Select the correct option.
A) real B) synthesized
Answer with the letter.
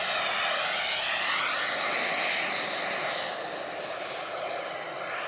A